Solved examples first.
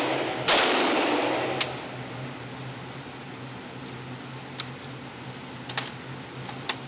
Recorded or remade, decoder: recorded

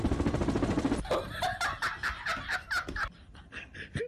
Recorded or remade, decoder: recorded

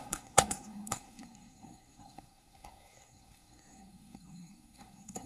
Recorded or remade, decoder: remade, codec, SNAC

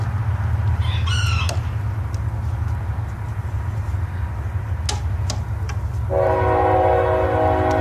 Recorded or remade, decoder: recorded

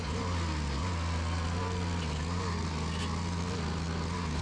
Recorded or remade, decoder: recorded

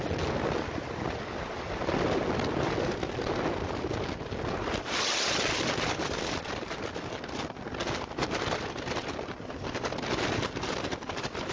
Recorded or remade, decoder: recorded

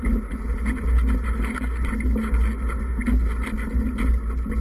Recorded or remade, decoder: recorded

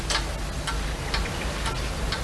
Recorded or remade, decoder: recorded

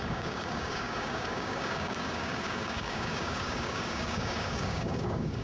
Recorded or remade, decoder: remade, codec, DAC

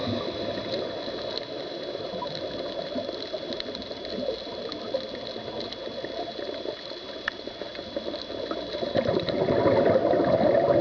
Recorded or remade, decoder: recorded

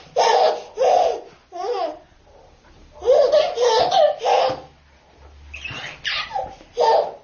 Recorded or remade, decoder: recorded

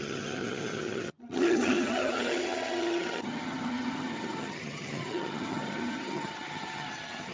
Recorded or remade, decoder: remade, vocoder, HiFi-GAN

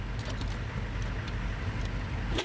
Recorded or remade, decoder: recorded